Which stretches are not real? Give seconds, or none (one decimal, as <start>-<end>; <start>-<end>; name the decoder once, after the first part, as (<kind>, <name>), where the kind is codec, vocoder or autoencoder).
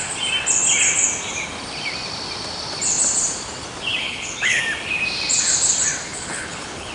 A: 4.0-4.6 (codec, HILCodec); 6.1-6.9